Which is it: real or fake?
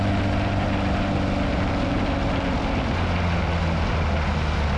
real